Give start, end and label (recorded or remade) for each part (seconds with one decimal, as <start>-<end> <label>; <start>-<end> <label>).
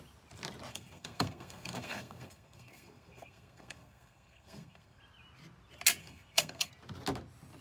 0.0-0.7 recorded; 0.7-5.0 remade; 5.0-6.0 recorded; 6.0-6.7 remade; 6.7-7.6 recorded